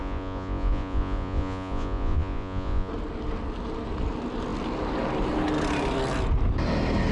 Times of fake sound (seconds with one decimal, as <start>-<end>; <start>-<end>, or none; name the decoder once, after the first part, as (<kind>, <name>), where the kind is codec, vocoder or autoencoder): 0.0-2.9 (vocoder, Vocos)

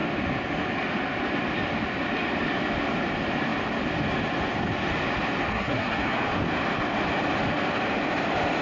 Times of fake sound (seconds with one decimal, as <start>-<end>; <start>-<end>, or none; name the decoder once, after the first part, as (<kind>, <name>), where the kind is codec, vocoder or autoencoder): 5.5-6.2 (codec, SNAC)

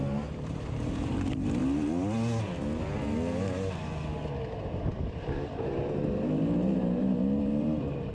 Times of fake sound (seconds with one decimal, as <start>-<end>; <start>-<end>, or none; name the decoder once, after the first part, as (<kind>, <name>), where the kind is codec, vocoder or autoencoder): 0.0-1.6 (vocoder, BigVGAN v2); 4.5-8.1

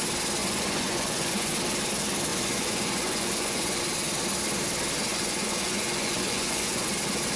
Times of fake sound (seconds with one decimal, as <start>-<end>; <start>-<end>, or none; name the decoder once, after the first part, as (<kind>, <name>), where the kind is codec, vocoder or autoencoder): 0.4-1.5 (vocoder, Vocos); 2.3-3.8; 5.1-6.9

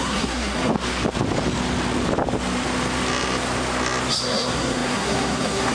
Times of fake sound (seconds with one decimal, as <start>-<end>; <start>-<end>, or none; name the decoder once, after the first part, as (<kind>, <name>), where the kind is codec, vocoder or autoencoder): 0.0-0.7 (codec, SNAC); 4.1-5.7

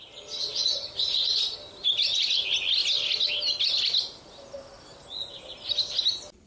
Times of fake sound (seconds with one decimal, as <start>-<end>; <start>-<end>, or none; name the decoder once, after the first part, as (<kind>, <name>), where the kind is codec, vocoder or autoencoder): none

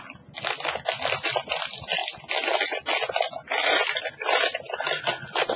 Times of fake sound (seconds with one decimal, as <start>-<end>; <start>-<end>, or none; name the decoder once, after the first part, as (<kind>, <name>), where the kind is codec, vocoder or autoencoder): none

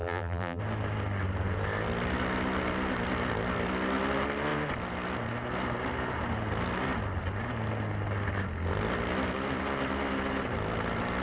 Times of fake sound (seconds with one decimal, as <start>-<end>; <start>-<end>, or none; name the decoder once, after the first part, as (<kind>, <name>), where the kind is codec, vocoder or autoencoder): 0.0-0.6 (vocoder, BigVGAN v2)